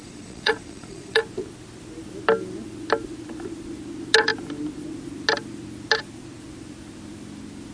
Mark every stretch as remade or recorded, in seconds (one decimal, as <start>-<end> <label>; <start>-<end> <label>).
0.0-1.2 remade; 1.2-7.7 recorded